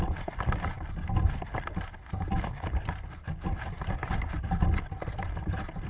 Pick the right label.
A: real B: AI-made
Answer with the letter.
A